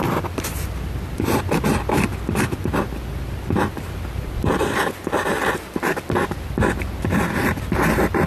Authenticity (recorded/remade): remade